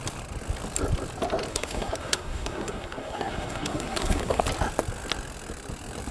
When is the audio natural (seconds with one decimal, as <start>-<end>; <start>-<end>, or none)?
0.0-1.5; 4.4-6.1